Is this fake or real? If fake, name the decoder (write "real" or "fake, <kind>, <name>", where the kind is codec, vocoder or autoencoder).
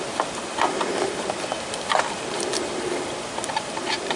fake, vocoder, BigVGAN v2